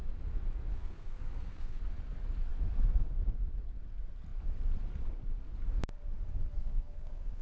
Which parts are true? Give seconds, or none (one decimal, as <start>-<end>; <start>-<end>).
0.0-0.7; 1.8-6.6